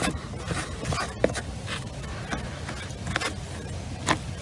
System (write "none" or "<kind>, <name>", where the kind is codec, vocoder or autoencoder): none